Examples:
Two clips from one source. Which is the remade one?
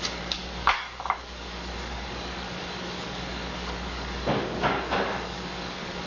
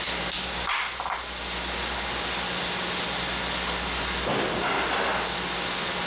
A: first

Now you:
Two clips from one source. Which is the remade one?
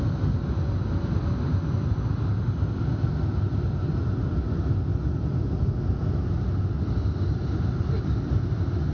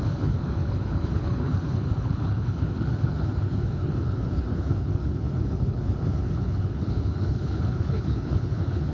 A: second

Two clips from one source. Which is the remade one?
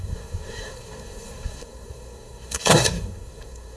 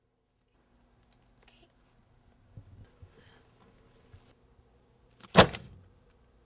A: first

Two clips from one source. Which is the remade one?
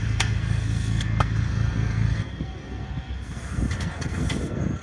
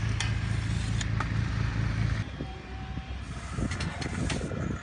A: first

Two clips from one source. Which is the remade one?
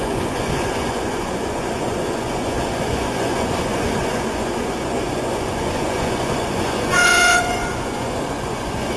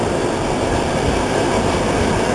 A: first